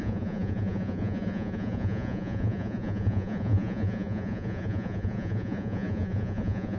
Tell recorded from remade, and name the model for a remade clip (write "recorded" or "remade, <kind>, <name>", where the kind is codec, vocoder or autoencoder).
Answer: remade, vocoder, Vocos